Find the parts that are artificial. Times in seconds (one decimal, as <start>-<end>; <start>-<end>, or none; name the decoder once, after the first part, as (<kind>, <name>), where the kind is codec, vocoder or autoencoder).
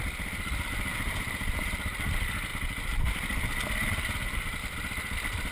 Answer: 0.0-5.5 (vocoder, BigVGAN v2)